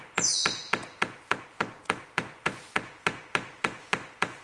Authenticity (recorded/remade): remade